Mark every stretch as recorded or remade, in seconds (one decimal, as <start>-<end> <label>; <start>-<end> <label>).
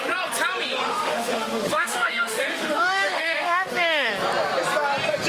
0.0-0.9 recorded; 0.9-4.1 remade; 4.1-5.3 recorded